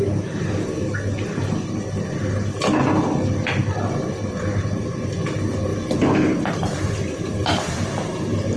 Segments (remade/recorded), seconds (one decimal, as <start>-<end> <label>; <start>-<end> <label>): 0.0-8.6 recorded